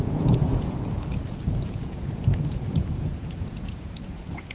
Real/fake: fake